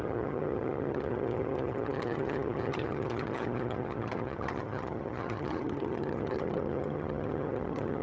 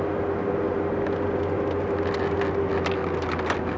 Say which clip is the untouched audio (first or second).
second